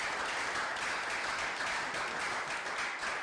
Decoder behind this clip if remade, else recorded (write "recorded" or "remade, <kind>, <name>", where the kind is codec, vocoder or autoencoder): recorded